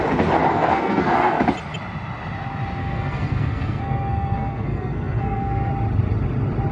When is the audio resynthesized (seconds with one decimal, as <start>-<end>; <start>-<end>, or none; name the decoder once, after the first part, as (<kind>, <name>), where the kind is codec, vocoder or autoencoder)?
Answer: 0.5-1.4 (codec, SNAC); 2.8-5.7